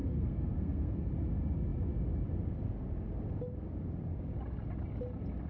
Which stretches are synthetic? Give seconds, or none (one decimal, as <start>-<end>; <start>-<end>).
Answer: 0.0-1.1